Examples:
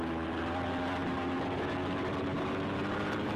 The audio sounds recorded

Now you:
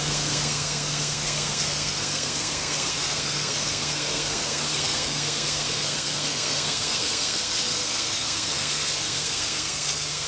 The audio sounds remade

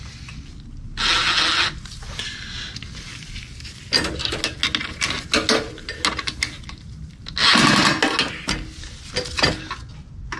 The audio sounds recorded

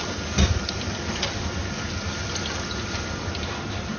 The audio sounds recorded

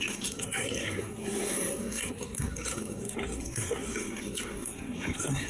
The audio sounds remade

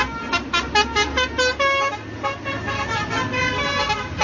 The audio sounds recorded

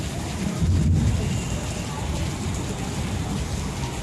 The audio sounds recorded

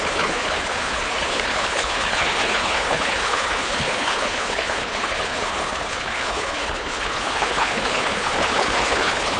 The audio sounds remade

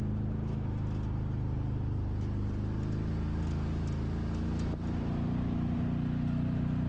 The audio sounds recorded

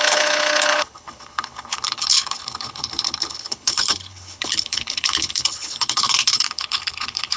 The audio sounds remade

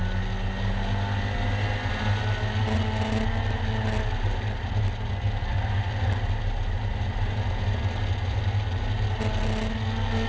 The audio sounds recorded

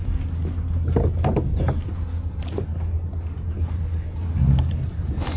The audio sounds recorded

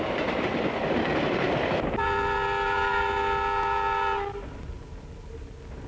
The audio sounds recorded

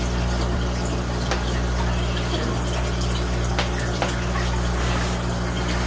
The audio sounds recorded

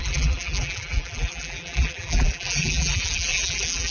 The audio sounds remade